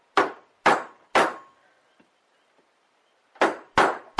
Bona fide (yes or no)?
yes